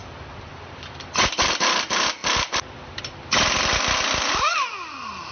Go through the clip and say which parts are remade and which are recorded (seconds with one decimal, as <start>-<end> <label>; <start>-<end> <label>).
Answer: 0.0-5.3 remade